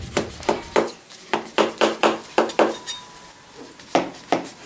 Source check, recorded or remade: remade